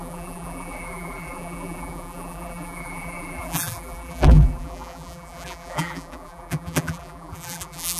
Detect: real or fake fake